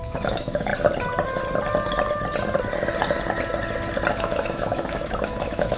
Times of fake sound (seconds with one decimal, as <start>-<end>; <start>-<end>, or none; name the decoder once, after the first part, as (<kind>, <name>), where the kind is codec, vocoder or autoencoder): 0.0-0.7 (autoencoder, DAC-VAE); 4.1-5.8